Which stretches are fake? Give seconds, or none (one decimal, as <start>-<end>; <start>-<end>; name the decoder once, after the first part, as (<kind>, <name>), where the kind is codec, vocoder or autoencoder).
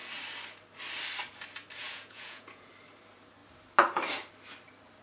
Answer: 1.8-2.7 (vocoder, Vocos)